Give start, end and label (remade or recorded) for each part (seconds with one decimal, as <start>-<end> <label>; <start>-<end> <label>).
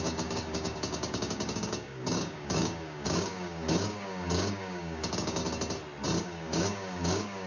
0.0-5.4 remade; 5.4-6.2 recorded; 6.2-7.5 remade